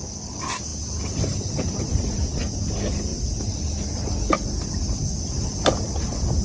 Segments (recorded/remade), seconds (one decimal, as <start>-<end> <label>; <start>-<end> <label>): 0.0-6.4 recorded